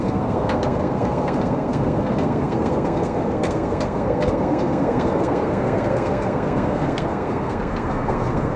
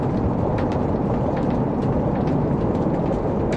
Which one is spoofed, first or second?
first